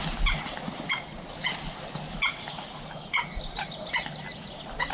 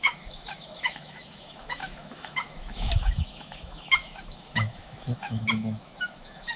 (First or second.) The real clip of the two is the first